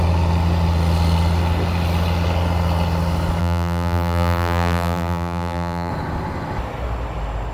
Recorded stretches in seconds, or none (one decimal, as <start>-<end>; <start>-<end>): 0.0-3.4; 5.9-7.5